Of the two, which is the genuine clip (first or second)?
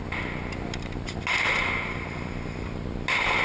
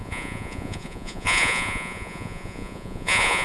first